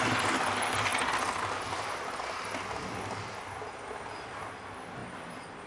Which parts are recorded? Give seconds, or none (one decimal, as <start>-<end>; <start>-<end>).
0.0-0.9; 4.3-5.0